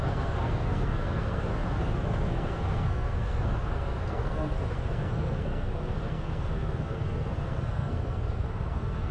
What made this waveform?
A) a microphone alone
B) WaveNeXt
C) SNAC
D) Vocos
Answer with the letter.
C